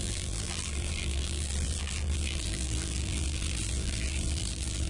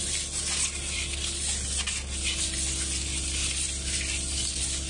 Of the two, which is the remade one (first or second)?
first